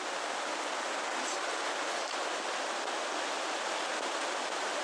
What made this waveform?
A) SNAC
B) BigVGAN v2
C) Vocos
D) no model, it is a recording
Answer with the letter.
D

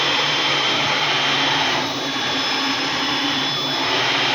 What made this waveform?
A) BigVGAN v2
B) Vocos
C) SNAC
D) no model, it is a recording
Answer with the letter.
A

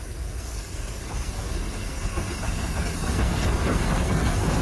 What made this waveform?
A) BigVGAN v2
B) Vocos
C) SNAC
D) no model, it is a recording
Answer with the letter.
C